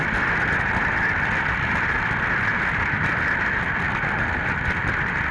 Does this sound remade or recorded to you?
recorded